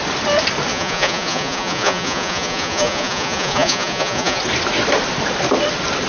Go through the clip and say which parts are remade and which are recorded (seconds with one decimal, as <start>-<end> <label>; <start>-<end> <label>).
0.0-0.7 recorded; 0.7-4.4 remade; 4.4-6.1 recorded

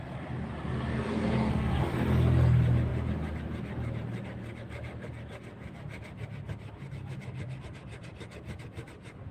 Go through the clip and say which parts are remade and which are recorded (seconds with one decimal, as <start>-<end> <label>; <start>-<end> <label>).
0.0-0.9 recorded; 0.9-1.8 remade; 1.8-9.3 recorded

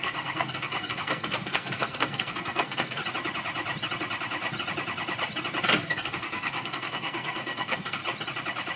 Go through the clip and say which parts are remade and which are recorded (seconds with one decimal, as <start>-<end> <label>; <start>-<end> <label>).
0.0-3.0 remade; 3.0-5.9 recorded; 5.9-8.0 remade; 8.0-8.8 recorded

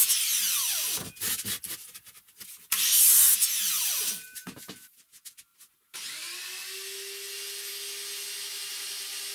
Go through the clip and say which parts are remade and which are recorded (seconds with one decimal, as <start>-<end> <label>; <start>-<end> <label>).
0.0-9.3 recorded

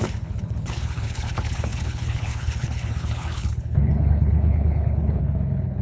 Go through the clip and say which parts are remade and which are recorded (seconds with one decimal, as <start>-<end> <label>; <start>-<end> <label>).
0.0-5.8 remade

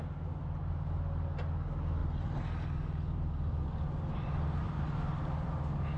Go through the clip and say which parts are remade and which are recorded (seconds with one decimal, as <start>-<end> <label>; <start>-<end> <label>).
0.0-2.0 recorded; 2.0-5.6 remade; 5.6-6.0 recorded

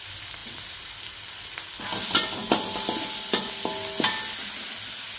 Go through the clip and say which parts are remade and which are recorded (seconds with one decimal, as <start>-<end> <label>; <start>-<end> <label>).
0.0-5.2 recorded